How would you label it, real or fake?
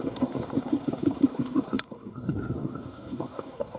fake